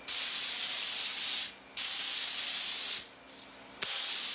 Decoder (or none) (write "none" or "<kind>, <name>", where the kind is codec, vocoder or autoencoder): none